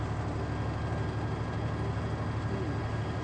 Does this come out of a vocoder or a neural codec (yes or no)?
no